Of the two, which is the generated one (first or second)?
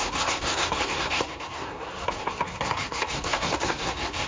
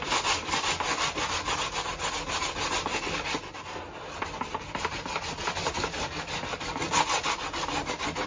first